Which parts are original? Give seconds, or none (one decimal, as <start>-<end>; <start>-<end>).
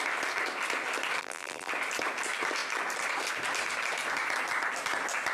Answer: 0.0-1.2; 1.7-5.3